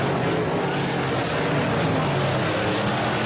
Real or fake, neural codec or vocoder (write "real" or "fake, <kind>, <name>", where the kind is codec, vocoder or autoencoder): real